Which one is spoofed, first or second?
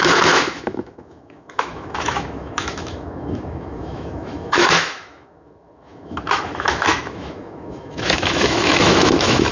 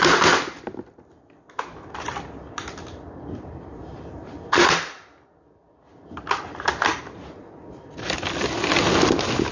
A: first